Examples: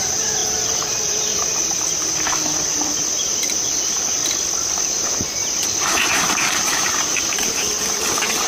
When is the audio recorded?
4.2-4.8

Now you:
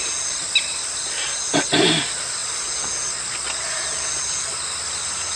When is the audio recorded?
0.0-5.4